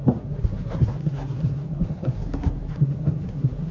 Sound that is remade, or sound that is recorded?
remade